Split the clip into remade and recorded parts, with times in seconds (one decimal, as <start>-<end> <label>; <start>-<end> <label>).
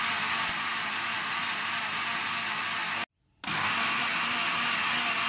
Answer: 0.0-5.3 recorded